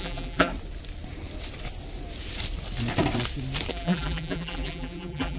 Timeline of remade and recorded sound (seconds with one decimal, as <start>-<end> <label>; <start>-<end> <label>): 0.0-0.5 remade; 0.5-3.7 recorded; 3.7-5.4 remade